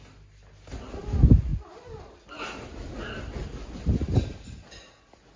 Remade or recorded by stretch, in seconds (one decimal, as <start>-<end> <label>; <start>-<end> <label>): 0.0-5.4 recorded